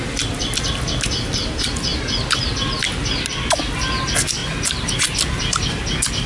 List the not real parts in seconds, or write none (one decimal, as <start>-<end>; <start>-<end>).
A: none